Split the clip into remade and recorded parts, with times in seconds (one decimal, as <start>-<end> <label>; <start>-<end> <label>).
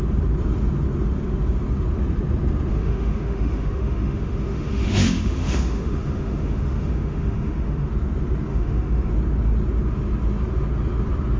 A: 0.0-2.7 recorded; 2.7-7.9 remade; 7.9-8.5 recorded; 8.5-9.1 remade; 9.1-11.4 recorded